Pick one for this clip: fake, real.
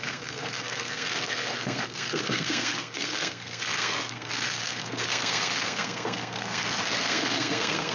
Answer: fake